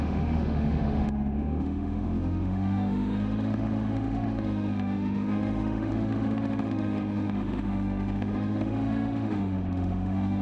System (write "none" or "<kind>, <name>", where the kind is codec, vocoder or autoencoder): autoencoder, DAC-VAE